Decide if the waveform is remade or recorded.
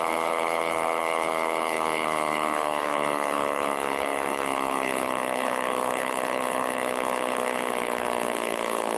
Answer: remade